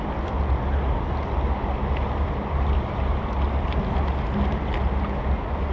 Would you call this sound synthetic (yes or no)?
no